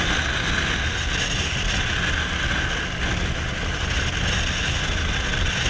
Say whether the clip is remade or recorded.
recorded